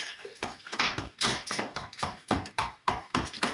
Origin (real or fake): fake